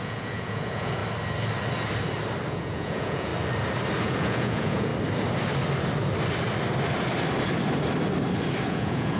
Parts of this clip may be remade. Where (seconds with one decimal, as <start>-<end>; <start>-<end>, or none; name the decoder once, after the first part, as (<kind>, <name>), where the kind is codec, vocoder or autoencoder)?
0.0-1.0 (vocoder, Vocos); 2.5-3.3; 4.0-4.9; 8.7-9.2